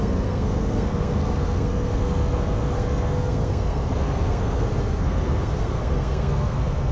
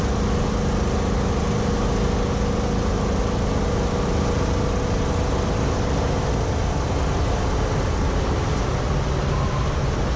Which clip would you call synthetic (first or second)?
first